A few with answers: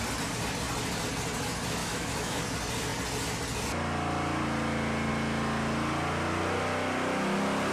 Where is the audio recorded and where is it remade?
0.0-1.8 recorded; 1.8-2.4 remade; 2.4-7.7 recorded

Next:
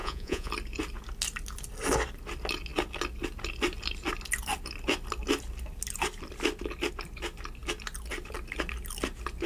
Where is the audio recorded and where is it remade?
0.0-0.5 remade; 0.5-9.5 recorded

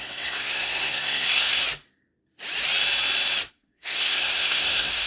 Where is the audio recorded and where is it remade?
0.0-1.6 remade; 1.6-3.5 recorded; 3.5-5.1 remade